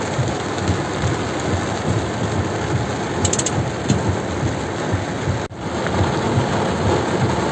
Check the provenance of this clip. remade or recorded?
recorded